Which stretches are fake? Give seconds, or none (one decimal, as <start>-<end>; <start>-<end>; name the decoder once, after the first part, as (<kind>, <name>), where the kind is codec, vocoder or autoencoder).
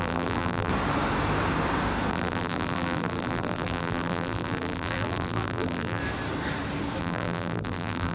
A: 0.0-0.7 (vocoder, BigVGAN v2); 2.1-6.0; 7.0-8.1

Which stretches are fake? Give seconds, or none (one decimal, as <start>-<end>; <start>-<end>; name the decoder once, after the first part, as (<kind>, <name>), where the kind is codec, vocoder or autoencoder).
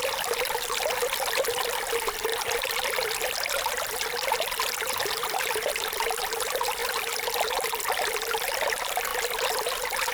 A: 2.3-2.9 (vocoder, BigVGAN v2)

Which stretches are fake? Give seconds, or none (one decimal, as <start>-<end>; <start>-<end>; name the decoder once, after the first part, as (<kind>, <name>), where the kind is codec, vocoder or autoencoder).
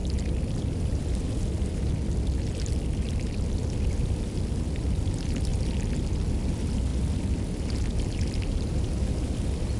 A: 0.0-5.5 (vocoder, BigVGAN v2); 6.3-6.9; 7.5-9.8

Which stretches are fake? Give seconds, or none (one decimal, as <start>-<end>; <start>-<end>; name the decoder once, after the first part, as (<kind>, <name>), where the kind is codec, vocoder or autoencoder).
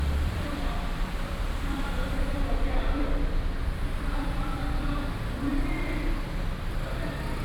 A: 0.0-7.4 (vocoder, BigVGAN v2)